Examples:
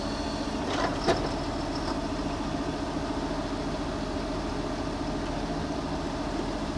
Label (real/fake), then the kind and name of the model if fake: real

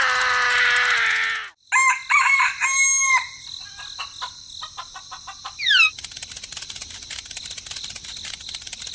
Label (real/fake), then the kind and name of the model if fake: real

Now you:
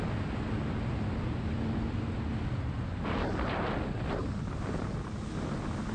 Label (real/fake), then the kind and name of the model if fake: real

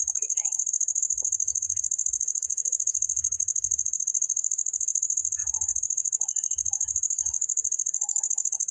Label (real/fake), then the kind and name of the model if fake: fake, codec, SNAC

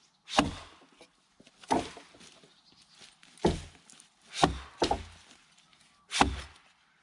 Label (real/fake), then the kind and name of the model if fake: real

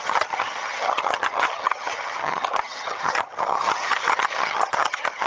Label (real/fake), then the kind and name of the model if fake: fake, vocoder, HiFi-GAN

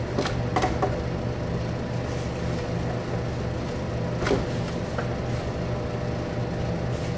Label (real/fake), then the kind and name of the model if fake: real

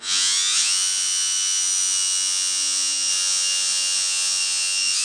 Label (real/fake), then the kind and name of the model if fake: fake, vocoder, Vocos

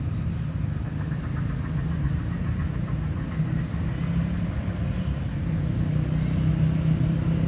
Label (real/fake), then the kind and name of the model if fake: real